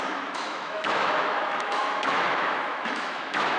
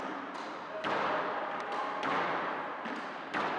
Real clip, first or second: second